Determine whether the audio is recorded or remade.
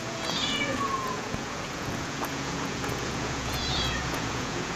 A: remade